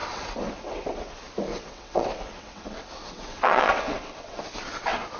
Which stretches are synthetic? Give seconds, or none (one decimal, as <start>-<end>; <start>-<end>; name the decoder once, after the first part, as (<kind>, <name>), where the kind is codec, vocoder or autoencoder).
0.0-1.1 (vocoder, WaveNeXt); 1.5-4.4